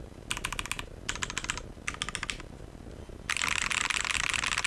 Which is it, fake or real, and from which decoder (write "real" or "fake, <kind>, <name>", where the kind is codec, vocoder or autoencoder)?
real